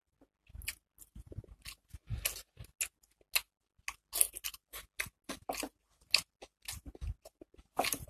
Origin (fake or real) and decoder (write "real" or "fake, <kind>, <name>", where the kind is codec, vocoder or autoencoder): real